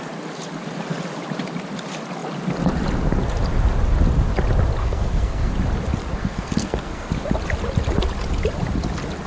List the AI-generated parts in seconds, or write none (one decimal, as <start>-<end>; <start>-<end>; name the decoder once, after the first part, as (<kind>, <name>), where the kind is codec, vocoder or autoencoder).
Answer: 4.8-5.5 (codec, SNAC); 6.2-7.1